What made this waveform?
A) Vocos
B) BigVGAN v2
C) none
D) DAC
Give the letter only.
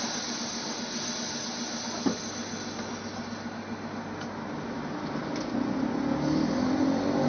C